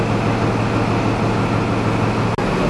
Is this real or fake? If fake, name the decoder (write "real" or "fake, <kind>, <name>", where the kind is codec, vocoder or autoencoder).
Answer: real